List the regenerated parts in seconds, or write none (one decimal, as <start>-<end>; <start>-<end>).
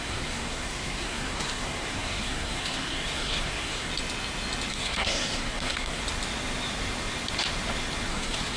0.0-3.9; 4.7-6.0; 8.1-8.6